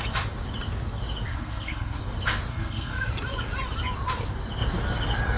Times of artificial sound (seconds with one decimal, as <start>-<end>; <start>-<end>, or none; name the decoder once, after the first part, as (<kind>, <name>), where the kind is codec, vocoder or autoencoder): 1.3-2.0 (codec, SNAC); 2.5-3.1